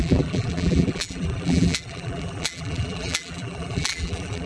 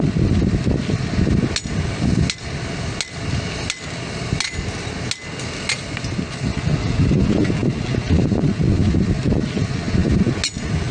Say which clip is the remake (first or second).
first